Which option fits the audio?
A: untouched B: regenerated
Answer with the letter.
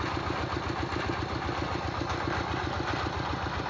A